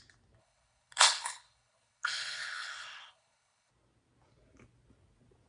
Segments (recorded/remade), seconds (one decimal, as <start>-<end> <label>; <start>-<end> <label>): 0.0-0.4 recorded; 0.4-3.7 remade; 3.7-5.5 recorded